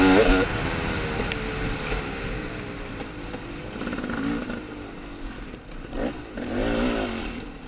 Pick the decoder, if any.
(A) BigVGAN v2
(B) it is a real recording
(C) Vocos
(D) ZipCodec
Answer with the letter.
B